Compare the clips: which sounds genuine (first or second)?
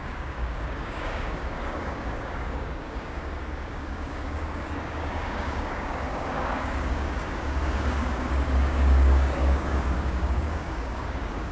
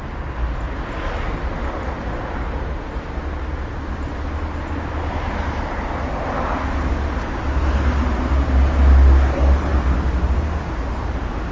second